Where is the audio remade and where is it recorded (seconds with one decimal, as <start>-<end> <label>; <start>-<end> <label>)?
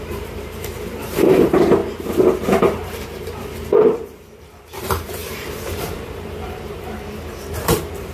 0.0-1.8 remade; 1.8-2.6 recorded; 2.6-8.1 remade